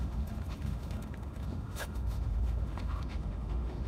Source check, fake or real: fake